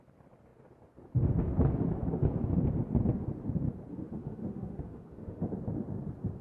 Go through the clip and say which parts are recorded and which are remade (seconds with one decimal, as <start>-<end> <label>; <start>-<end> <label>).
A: 0.0-3.9 recorded; 3.9-5.5 remade; 5.5-6.4 recorded